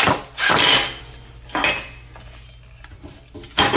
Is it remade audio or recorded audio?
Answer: recorded